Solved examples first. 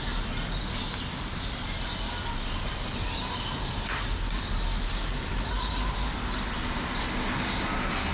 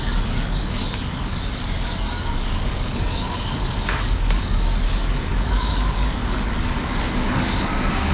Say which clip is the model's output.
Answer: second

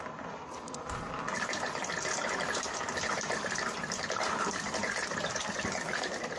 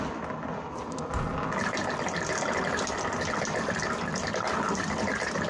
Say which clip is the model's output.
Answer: first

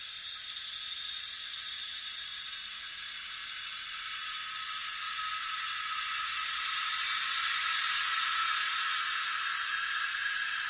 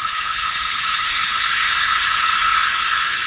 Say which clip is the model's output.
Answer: second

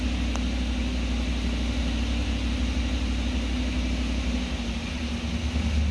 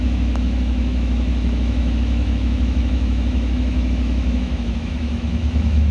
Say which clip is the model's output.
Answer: second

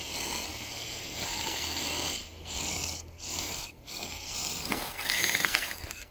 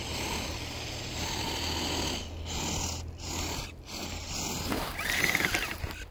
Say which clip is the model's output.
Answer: first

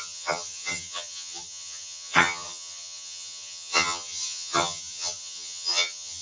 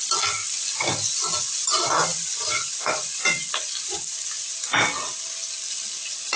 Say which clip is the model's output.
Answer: first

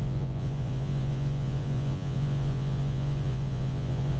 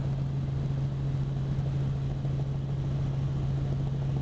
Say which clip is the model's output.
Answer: first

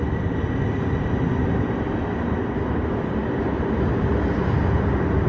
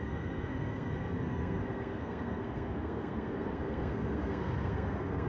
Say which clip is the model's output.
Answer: second